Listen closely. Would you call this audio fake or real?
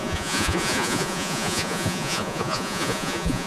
fake